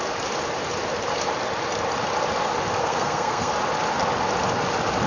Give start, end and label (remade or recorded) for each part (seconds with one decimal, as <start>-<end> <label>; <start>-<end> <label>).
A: 0.0-2.8 recorded; 2.8-3.5 remade; 3.5-5.1 recorded